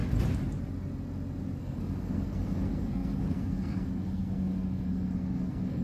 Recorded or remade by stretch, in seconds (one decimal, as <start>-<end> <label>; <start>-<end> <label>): 0.0-1.6 recorded; 1.6-5.8 remade